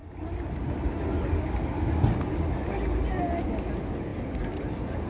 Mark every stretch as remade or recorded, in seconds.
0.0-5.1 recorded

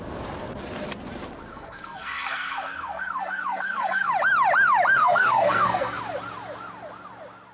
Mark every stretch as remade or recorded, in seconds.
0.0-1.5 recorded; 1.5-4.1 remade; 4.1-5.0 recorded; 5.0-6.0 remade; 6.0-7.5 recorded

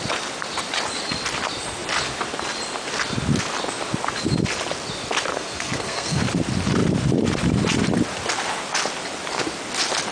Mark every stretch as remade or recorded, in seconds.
0.0-5.3 recorded; 5.3-6.2 remade; 6.2-10.1 recorded

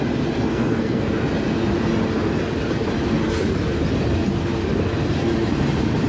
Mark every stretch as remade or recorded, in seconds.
0.0-0.5 recorded; 0.5-1.1 remade; 1.1-6.1 recorded

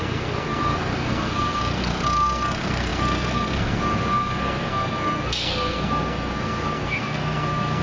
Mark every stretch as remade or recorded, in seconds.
0.0-7.8 remade

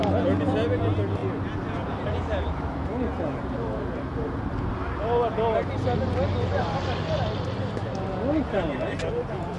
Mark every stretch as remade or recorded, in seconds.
0.0-9.6 recorded